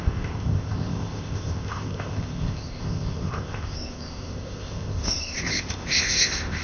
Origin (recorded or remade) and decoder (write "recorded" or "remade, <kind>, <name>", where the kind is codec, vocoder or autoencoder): remade, codec, ZipCodec